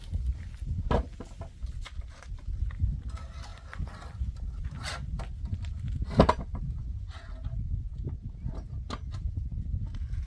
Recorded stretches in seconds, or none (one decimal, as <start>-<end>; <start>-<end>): 0.0-10.3